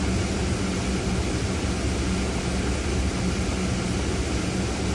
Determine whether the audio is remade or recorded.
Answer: recorded